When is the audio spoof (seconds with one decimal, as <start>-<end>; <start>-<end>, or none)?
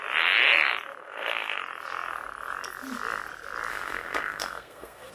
1.0-1.6; 3.7-5.1